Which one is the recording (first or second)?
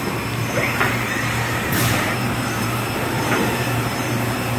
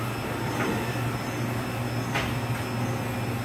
second